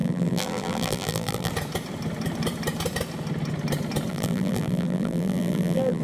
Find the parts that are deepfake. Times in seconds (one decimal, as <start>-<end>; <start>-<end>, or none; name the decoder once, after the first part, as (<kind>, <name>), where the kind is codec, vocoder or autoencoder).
0.0-1.5 (vocoder, BigVGAN v2); 4.1-6.0